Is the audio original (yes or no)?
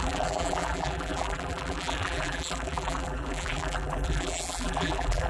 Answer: no